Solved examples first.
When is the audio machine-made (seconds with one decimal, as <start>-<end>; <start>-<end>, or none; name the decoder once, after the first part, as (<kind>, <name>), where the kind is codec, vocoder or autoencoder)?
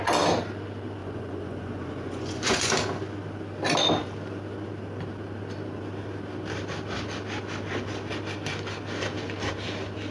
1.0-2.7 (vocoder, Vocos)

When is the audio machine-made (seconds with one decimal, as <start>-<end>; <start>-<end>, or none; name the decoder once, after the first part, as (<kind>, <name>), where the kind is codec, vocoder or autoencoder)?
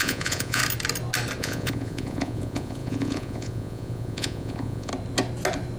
0.0-0.6 (vocoder, Vocos); 1.4-4.9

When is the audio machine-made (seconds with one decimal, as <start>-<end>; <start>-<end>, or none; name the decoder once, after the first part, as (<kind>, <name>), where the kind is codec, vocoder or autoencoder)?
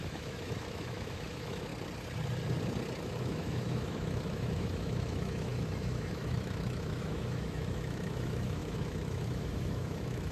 0.0-1.7 (autoencoder, DAC-VAE); 3.0-10.3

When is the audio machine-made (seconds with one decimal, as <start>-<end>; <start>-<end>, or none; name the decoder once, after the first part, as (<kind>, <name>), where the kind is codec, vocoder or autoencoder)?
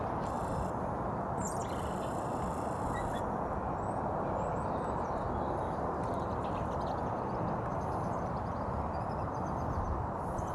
none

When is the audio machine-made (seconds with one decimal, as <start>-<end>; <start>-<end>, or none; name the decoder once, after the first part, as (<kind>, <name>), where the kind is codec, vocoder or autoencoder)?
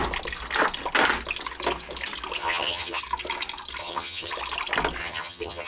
2.4-3.0 (vocoder, HiFi-GAN); 3.8-4.3; 5.0-5.7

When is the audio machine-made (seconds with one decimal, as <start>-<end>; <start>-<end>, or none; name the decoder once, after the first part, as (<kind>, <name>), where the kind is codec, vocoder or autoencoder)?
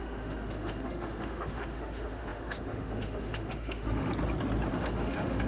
0.0-4.1 (autoencoder, DAC-VAE); 4.7-5.5